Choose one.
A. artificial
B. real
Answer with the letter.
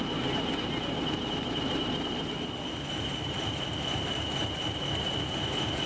B